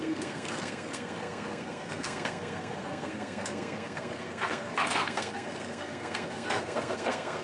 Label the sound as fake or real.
fake